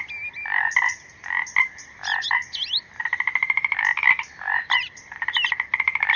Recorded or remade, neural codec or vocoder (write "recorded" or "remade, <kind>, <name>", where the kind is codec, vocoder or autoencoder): recorded